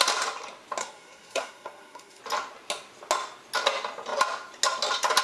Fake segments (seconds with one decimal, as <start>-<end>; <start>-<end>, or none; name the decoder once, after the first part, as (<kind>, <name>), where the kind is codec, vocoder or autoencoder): 0.8-2.2 (codec, SNAC)